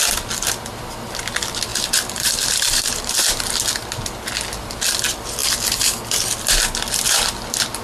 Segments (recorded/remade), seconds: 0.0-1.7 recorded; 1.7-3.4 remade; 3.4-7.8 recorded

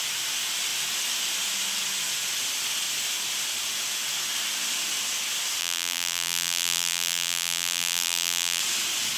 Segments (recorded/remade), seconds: 0.0-5.6 recorded; 5.6-8.6 remade; 8.6-9.2 recorded

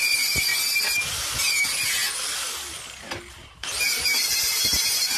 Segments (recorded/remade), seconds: 0.0-0.5 remade; 0.5-3.3 recorded; 3.3-5.2 remade

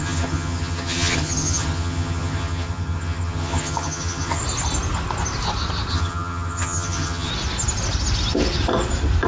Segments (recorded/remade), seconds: 0.0-4.4 remade; 4.4-5.9 recorded; 5.9-7.3 remade; 7.3-9.3 recorded